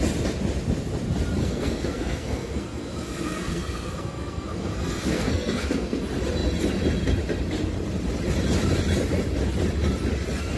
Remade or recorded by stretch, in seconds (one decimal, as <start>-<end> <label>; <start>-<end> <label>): 0.0-1.4 recorded; 1.4-6.0 remade; 6.0-10.6 recorded